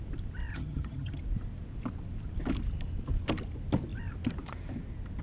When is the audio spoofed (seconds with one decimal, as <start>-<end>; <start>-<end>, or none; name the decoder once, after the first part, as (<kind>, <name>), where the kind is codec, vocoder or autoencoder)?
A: 0.5-1.2 (vocoder, HiFi-GAN)